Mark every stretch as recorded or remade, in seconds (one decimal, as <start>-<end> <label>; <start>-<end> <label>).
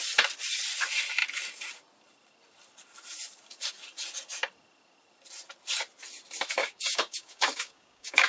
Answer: 0.0-6.6 recorded; 6.6-8.3 remade